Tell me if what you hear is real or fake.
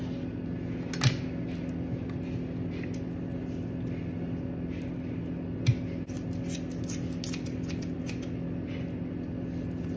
real